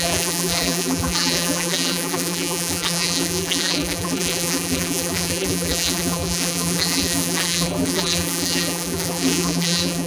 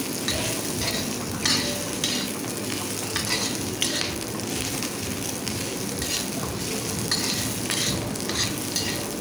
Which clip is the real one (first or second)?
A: second